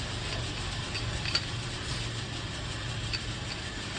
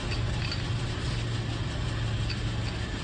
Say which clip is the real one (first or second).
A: second